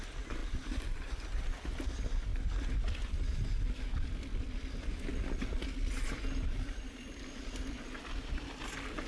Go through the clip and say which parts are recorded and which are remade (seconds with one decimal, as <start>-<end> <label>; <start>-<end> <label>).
0.0-0.4 recorded; 0.4-1.1 remade; 1.1-5.1 recorded; 5.1-8.6 remade; 8.6-9.1 recorded